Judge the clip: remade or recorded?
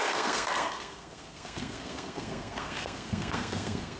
remade